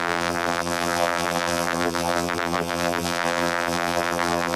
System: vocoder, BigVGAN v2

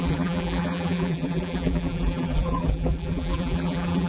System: vocoder, BigVGAN v2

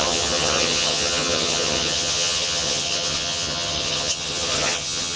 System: vocoder, HiFi-GAN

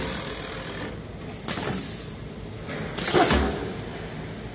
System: none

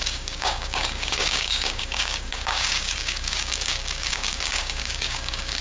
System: codec, DAC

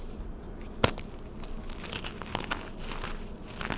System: none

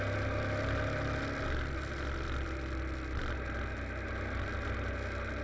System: none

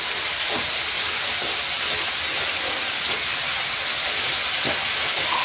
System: none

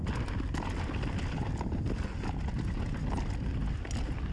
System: none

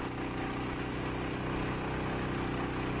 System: none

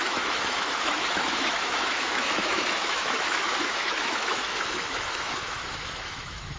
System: autoencoder, DAC-VAE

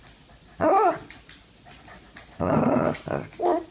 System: none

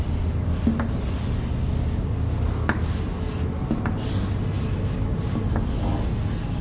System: none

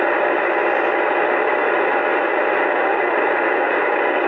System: none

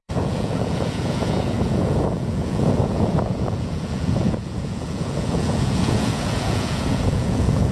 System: vocoder, Vocos